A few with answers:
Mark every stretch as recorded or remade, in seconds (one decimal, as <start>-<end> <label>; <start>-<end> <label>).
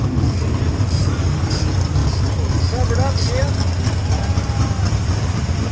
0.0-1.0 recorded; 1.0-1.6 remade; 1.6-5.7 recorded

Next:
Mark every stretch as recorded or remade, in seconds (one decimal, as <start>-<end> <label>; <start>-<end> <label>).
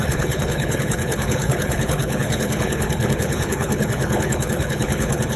0.0-5.4 remade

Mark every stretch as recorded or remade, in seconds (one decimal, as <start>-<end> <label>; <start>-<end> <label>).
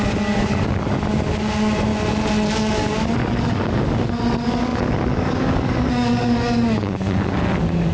0.0-1.9 remade; 1.9-2.6 recorded; 2.6-7.9 remade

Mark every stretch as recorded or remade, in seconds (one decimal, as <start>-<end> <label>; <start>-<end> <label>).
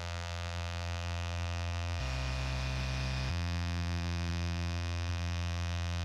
0.0-2.0 remade; 2.0-3.3 recorded; 3.3-6.0 remade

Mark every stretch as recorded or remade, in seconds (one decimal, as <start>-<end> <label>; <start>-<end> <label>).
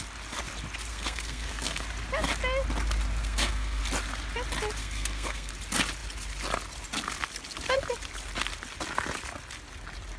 0.0-0.9 recorded; 0.9-1.8 remade; 1.8-3.2 recorded; 3.2-3.8 remade; 3.8-4.8 recorded; 4.8-5.5 remade; 5.5-10.2 recorded